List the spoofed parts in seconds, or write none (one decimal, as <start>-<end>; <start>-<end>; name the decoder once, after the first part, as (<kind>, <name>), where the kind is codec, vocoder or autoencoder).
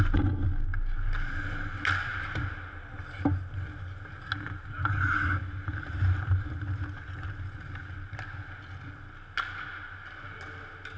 none